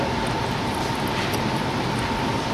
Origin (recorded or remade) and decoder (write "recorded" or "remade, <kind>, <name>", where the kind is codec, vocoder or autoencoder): recorded